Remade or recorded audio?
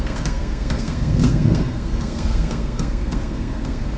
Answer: remade